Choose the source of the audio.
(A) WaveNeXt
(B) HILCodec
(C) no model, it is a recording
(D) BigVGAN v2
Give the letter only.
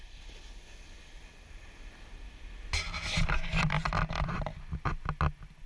C